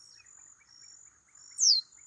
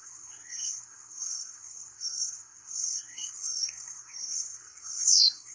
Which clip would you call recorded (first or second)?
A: first